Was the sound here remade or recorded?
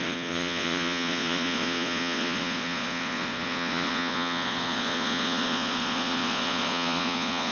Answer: remade